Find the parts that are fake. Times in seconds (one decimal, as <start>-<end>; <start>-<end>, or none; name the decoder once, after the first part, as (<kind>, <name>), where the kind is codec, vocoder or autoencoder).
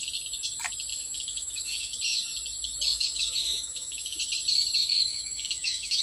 0.9-1.9 (autoencoder, DAC-VAE); 2.9-4.2; 4.8-6.0